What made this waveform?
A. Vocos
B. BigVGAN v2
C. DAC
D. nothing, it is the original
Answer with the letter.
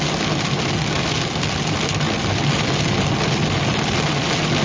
D